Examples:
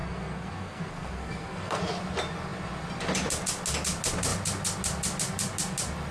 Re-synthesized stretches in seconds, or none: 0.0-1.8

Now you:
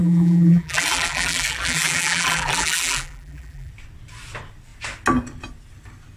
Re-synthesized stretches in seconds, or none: 0.0-3.7

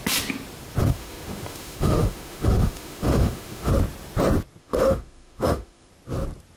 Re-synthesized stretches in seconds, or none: 0.8-3.7; 4.6-5.9

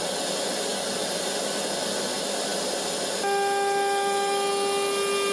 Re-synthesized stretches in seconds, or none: none